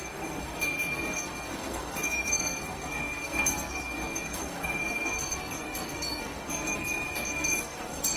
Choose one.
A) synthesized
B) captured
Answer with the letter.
A